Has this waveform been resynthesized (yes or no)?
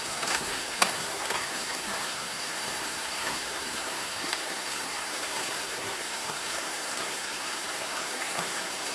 yes